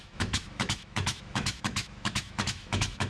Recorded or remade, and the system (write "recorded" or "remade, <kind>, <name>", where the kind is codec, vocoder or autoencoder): remade, autoencoder, DAC-VAE